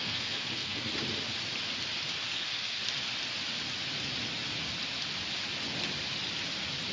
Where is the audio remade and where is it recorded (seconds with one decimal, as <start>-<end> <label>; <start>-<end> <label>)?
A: 0.0-0.9 remade; 0.9-2.3 recorded; 2.3-2.8 remade; 2.8-6.9 recorded